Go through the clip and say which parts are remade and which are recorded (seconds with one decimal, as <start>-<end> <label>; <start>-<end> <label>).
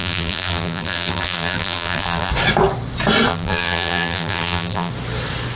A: 0.0-2.3 remade; 2.3-3.3 recorded; 3.3-4.9 remade; 4.9-5.6 recorded